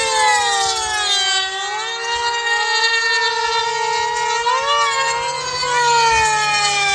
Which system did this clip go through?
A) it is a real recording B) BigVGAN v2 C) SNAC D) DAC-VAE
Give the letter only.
A